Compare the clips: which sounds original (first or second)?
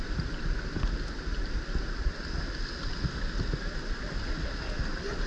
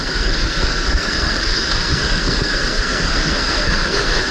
first